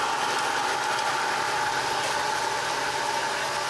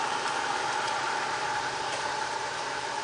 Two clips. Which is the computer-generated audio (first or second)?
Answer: second